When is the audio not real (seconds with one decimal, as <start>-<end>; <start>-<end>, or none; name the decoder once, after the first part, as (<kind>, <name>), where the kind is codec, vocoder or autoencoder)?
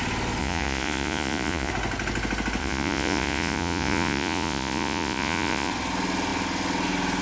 0.4-1.7 (vocoder, Vocos); 2.6-5.7